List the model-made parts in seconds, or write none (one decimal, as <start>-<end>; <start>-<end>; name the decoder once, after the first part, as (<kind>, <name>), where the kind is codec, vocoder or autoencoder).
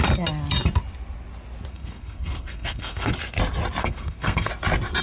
1.7-3.1 (codec, SNAC); 3.8-4.5